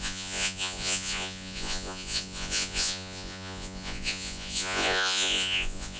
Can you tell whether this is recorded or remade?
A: remade